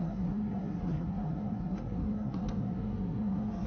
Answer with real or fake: fake